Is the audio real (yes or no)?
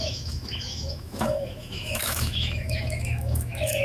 no